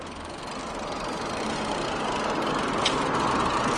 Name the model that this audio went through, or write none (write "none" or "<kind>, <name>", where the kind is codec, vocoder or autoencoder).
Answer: none